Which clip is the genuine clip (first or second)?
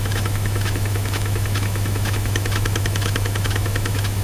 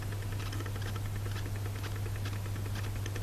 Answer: second